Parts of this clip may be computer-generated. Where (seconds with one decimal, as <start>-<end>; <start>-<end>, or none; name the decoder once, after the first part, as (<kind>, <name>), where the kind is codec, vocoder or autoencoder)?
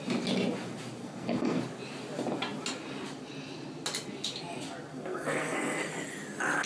1.0-1.6 (codec, SNAC); 4.9-5.9